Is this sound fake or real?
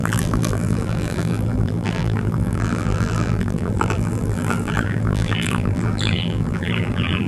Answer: fake